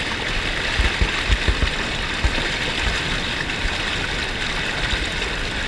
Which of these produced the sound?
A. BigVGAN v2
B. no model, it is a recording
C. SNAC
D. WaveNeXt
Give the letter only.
B